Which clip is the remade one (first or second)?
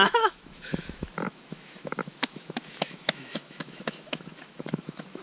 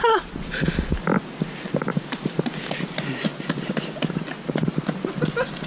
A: first